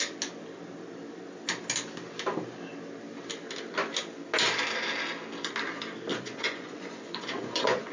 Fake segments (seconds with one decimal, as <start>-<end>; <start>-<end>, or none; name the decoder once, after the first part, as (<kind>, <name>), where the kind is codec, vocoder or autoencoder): 6.1-7.9 (vocoder, Vocos)

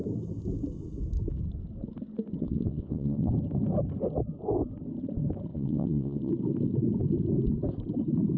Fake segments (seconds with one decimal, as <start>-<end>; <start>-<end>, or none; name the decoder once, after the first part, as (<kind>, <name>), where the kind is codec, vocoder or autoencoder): 2.4-3.3 (vocoder, Vocos); 5.5-6.3

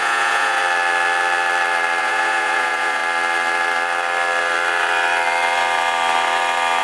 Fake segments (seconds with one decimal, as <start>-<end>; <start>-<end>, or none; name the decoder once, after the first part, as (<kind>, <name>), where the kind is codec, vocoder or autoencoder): 0.0-0.6 (vocoder, Vocos); 2.0-3.0

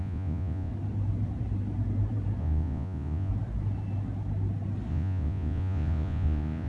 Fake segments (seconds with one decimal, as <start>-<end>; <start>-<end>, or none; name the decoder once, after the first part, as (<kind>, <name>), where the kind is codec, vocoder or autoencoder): 0.0-0.7 (vocoder, Vocos); 2.4-3.3; 4.9-6.7